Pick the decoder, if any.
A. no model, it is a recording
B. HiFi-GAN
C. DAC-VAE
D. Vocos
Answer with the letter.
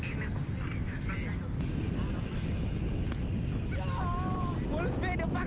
A